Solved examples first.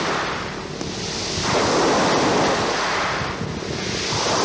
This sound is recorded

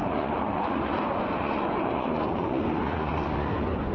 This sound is remade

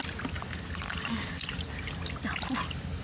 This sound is recorded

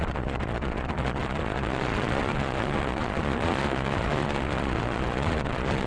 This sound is remade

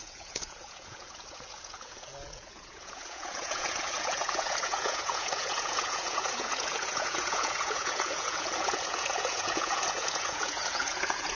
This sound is remade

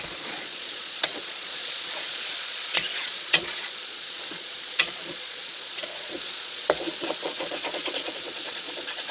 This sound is remade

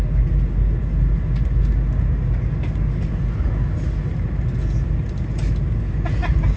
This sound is recorded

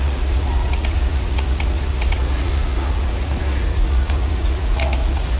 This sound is remade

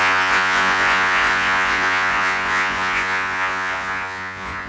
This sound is remade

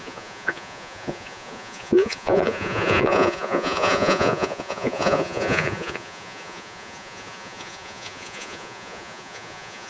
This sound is remade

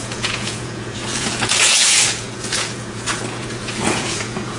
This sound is remade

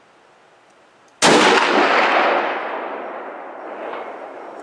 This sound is recorded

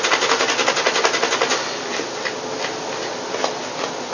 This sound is recorded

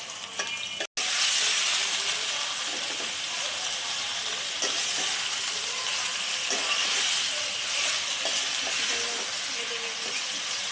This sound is recorded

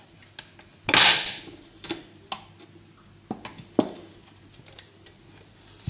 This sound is recorded